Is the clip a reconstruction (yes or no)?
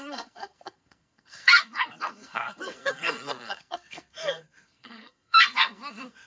yes